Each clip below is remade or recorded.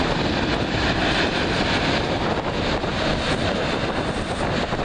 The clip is recorded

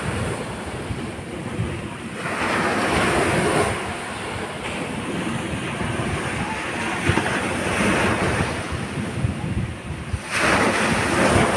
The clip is recorded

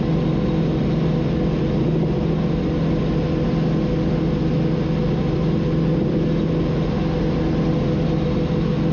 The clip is recorded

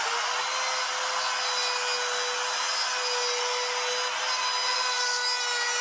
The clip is recorded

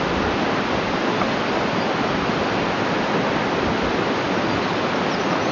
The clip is recorded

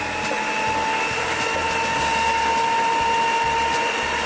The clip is recorded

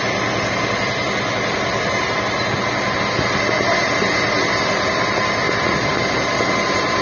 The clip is recorded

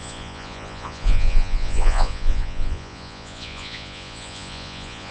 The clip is remade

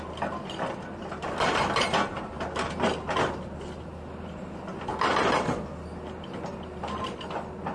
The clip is recorded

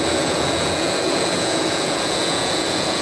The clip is remade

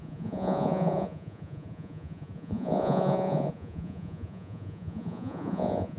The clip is remade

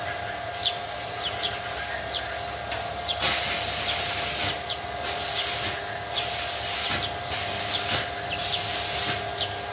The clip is recorded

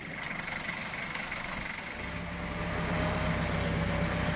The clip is recorded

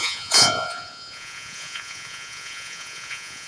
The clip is remade